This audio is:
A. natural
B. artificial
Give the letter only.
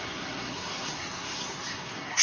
B